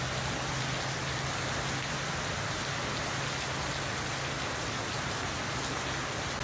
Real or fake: real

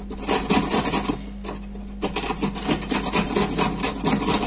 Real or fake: real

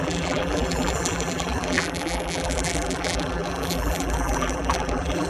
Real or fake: fake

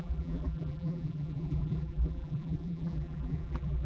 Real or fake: fake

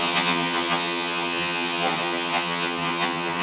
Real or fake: fake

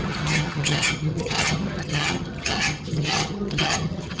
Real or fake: fake